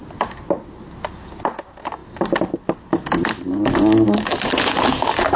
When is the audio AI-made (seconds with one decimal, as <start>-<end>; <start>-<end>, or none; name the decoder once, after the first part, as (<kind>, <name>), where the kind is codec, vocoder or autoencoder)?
none